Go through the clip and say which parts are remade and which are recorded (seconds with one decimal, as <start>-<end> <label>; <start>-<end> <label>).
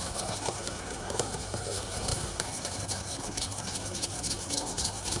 0.0-5.2 remade